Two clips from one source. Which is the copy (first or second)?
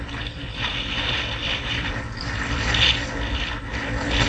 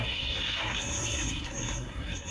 second